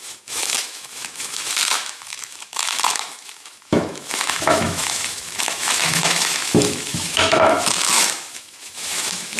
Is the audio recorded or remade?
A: remade